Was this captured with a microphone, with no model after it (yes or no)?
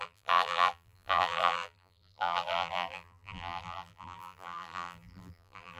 no